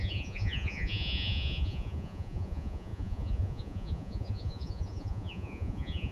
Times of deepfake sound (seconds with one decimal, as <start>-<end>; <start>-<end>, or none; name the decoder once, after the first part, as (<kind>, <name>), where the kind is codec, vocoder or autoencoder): 0.0-6.1 (vocoder, Vocos)